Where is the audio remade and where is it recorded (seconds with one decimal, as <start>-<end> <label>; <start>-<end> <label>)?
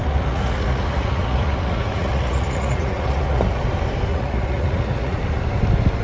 0.0-3.6 remade; 3.6-4.1 recorded; 4.1-5.2 remade; 5.2-6.0 recorded